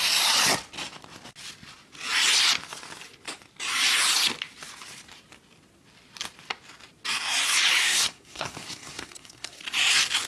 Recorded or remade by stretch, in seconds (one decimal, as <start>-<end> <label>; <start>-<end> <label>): 0.0-7.8 recorded; 7.8-9.6 remade; 9.6-10.3 recorded